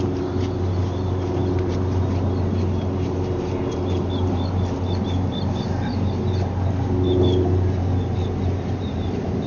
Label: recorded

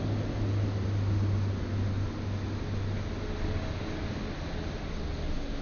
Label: recorded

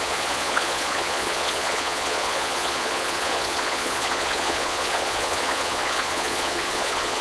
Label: remade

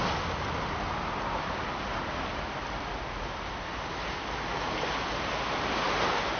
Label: recorded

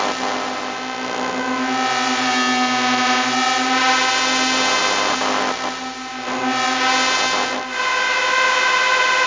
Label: recorded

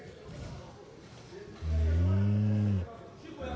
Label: recorded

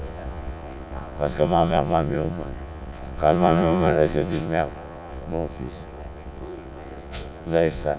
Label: remade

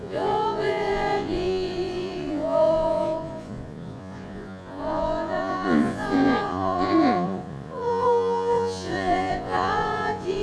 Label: remade